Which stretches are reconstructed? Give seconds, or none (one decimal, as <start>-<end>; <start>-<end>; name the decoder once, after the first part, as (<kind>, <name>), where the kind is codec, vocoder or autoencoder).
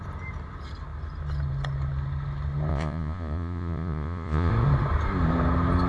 2.7-4.5 (vocoder, Vocos)